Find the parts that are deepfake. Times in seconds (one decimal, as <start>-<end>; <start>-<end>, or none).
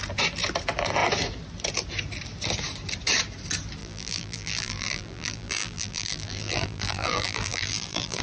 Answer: 3.8-8.2